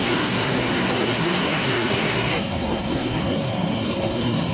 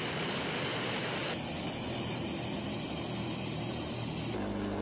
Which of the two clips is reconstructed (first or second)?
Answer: first